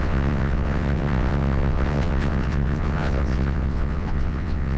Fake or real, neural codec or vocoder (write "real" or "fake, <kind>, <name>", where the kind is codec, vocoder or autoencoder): fake, vocoder, WaveNeXt